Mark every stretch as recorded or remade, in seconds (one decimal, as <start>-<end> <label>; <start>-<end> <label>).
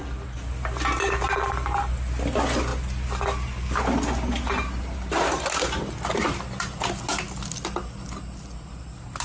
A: 0.0-9.2 recorded